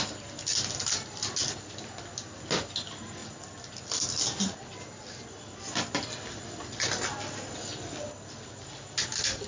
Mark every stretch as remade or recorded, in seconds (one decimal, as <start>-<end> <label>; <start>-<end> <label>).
0.0-9.5 recorded